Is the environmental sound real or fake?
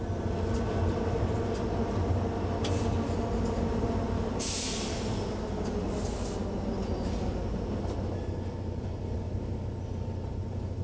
real